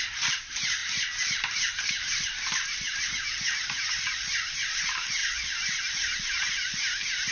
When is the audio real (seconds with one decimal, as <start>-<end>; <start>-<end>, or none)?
2.9-4.2; 5.2-5.8